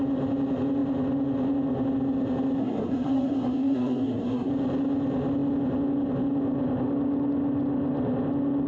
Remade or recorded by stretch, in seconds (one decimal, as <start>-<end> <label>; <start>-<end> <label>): 0.0-2.6 recorded; 2.6-4.5 remade; 4.5-8.7 recorded